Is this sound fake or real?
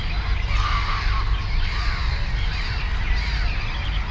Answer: real